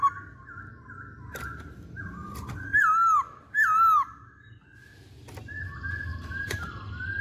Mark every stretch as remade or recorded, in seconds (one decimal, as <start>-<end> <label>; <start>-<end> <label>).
0.0-1.3 recorded; 1.3-2.8 remade; 2.8-6.1 recorded; 6.1-6.7 remade; 6.7-7.2 recorded